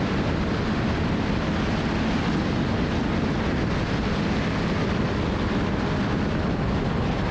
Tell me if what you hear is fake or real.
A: real